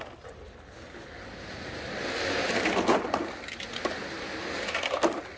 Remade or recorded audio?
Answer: recorded